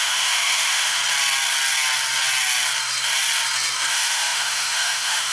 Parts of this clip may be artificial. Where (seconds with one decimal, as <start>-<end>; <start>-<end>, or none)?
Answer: 0.0-1.0; 3.9-5.3